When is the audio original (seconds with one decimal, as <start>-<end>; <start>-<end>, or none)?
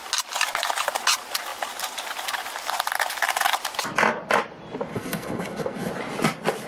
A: 0.0-4.9; 5.9-6.7